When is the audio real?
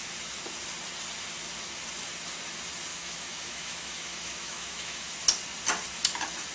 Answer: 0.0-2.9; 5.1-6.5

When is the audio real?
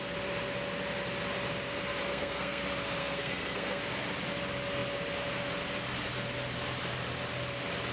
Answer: 0.0-2.1; 2.6-3.0; 3.8-7.9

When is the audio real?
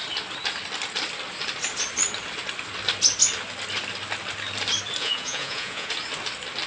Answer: 0.0-5.0; 5.9-6.7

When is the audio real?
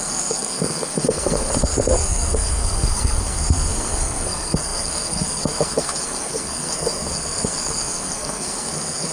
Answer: none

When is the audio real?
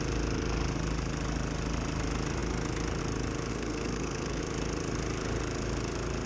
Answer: 0.0-3.5; 4.4-6.3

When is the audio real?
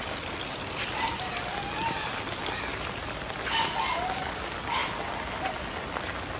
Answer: 0.0-6.4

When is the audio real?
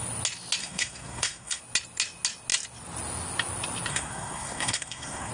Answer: 0.0-0.6; 1.6-3.9